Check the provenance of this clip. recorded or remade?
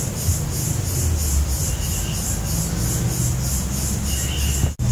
recorded